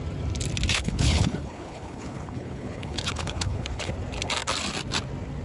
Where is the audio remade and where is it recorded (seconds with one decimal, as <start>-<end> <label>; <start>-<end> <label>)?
0.0-0.7 recorded; 0.7-3.9 remade; 3.9-5.4 recorded